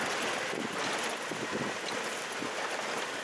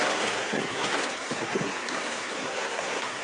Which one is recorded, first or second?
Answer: first